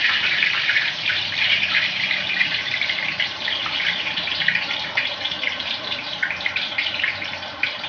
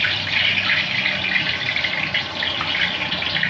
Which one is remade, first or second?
first